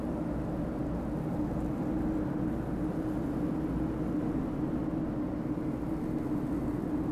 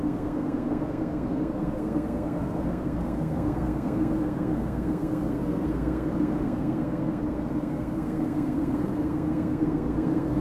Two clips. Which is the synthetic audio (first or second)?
second